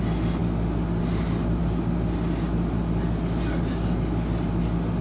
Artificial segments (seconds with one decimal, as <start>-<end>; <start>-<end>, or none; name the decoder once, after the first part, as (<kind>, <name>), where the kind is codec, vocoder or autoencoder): none